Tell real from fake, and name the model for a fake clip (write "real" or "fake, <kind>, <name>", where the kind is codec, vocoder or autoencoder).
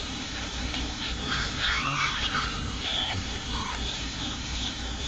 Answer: fake, codec, SNAC